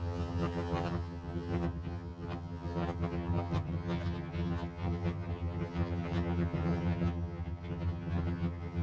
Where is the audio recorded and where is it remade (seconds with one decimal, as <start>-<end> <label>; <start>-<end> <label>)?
0.0-8.8 remade

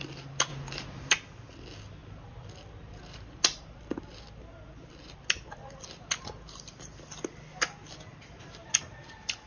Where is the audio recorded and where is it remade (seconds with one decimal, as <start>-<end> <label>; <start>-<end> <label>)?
0.0-9.5 recorded

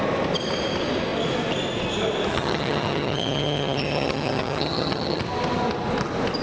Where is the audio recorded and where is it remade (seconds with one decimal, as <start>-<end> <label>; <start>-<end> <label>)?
0.0-2.3 recorded; 2.3-5.2 remade; 5.2-6.4 recorded

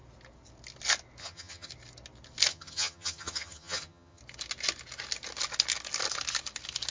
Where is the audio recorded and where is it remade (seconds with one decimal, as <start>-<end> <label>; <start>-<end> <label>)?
0.0-1.2 recorded; 1.2-1.7 remade; 1.7-2.5 recorded; 2.5-4.2 remade; 4.2-6.9 recorded

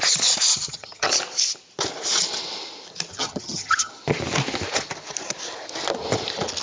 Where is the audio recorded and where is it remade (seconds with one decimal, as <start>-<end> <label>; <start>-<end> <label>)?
0.0-0.5 recorded; 0.5-1.1 remade; 1.1-3.1 recorded; 3.1-3.9 remade; 3.9-6.6 recorded

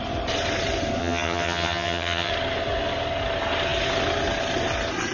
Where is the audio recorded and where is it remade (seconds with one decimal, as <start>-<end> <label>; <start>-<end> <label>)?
0.0-1.0 recorded; 1.0-2.3 remade; 2.3-5.1 recorded